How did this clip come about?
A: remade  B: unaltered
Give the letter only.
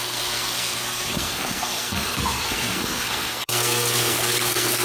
A